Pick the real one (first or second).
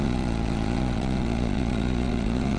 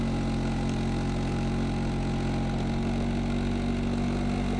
second